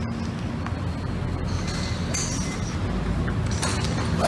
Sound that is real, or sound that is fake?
real